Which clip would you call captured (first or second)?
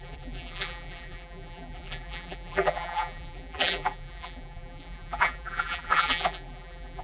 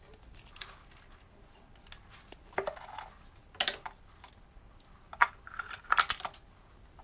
second